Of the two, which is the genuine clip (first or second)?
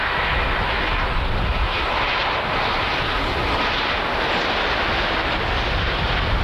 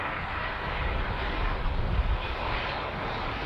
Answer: first